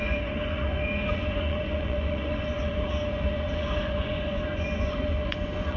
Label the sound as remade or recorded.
remade